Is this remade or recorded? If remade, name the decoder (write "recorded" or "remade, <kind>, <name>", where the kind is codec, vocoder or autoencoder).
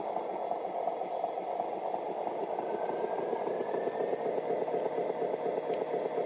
recorded